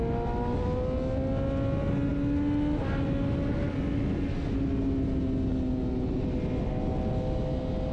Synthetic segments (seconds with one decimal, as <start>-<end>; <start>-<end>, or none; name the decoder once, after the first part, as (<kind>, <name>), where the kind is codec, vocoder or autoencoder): none